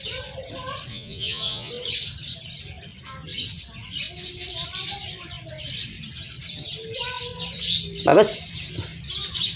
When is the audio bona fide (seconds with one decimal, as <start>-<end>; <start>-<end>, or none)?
0.0-0.9; 1.7-9.6